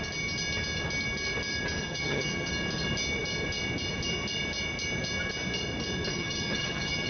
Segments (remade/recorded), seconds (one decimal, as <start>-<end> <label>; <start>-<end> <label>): 0.0-1.8 recorded; 1.8-2.5 remade; 2.5-6.1 recorded; 6.1-7.1 remade